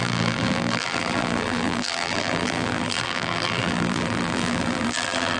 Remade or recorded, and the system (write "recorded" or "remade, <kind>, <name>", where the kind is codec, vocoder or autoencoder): remade, vocoder, BigVGAN v2